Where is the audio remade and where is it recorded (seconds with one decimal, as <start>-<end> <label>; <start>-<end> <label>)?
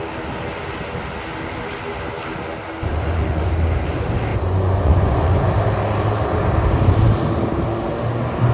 0.0-2.9 recorded; 2.9-3.5 remade; 3.5-4.3 recorded; 4.3-5.5 remade; 5.5-8.5 recorded